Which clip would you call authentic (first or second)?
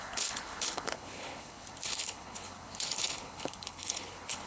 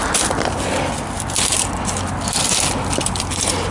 second